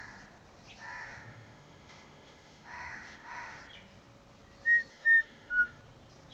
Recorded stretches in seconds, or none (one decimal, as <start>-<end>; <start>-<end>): 0.0-1.1; 3.6-4.9; 5.8-6.3